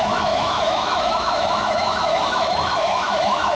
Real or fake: fake